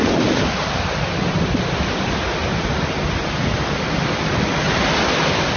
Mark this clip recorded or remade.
recorded